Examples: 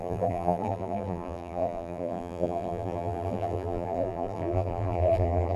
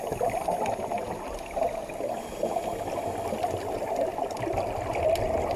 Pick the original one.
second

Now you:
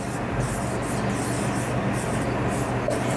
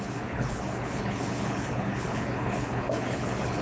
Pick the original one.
first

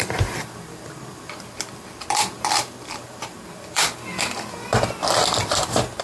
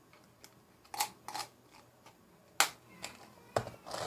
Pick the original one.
second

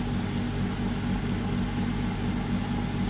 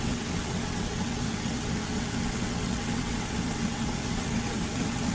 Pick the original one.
first